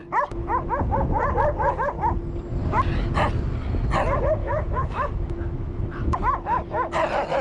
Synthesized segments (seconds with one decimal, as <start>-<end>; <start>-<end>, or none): 4.4-6.2